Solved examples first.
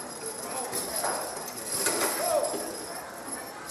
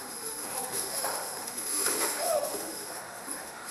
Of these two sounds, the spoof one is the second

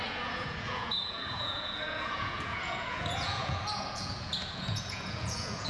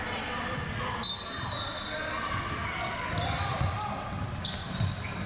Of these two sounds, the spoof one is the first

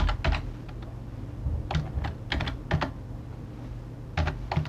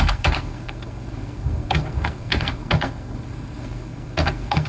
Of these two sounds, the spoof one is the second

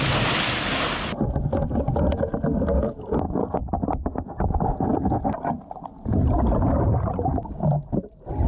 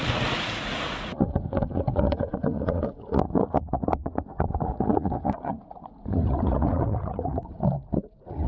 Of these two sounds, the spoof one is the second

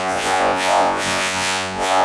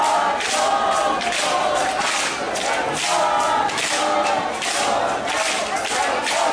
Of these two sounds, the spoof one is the first